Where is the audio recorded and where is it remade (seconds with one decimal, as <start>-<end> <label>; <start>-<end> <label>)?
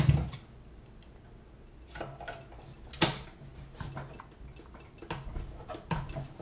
0.0-6.4 recorded